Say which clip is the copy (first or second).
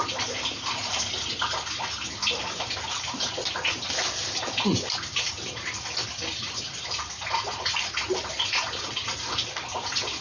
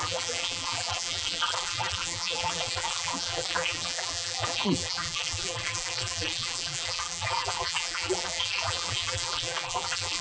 second